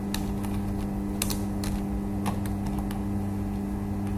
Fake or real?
real